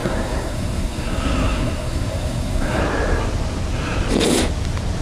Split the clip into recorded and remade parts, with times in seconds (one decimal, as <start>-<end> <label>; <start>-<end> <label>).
0.0-2.8 remade; 2.8-5.0 recorded